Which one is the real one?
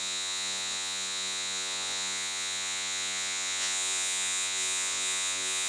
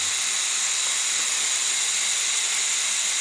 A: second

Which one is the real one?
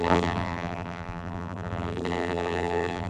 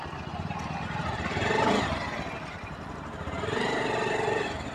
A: second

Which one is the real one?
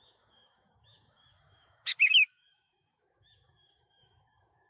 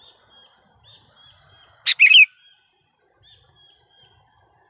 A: second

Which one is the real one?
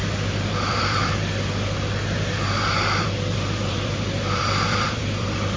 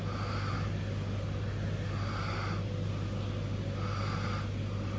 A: second